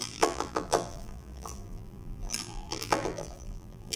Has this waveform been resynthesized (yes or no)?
yes